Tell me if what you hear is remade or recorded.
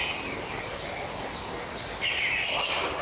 recorded